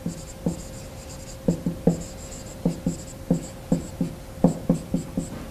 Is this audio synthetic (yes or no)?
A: no